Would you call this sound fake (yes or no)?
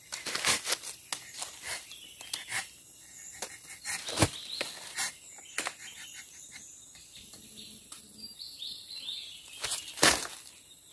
no